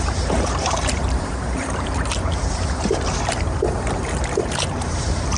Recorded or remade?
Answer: remade